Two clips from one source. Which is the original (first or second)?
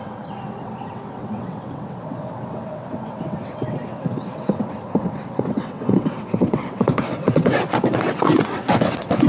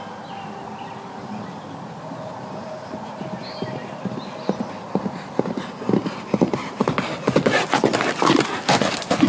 second